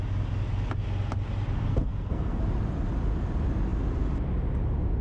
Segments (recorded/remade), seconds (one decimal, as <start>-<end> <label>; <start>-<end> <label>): 0.0-1.7 recorded; 1.7-2.4 remade; 2.4-5.0 recorded